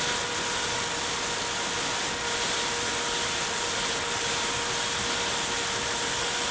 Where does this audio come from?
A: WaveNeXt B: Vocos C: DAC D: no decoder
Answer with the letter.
D